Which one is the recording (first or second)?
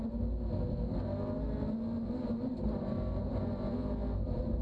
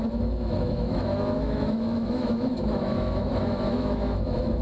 first